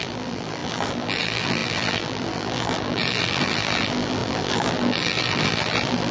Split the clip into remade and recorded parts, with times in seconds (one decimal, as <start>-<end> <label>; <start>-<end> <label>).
0.0-6.1 remade